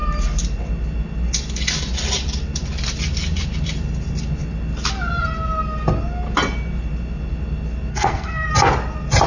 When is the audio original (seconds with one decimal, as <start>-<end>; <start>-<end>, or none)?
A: 0.0-7.9; 8.5-9.3